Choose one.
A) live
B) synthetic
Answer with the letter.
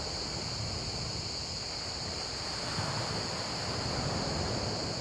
A